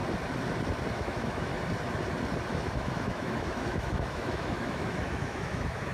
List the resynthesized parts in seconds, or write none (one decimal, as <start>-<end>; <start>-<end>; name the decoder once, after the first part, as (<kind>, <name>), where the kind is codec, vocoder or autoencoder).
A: 0.9-1.5 (autoencoder, DAC-VAE); 2.5-5.9